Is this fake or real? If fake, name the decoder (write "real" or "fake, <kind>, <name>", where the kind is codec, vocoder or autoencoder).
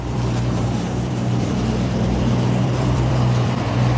fake, vocoder, BigVGAN v2